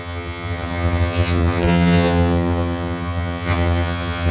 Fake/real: fake